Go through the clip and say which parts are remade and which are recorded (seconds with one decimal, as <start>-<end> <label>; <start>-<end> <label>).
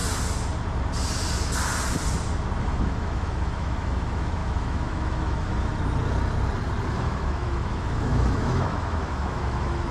0.0-2.6 recorded; 2.6-5.7 remade; 5.7-6.9 recorded; 6.9-9.9 remade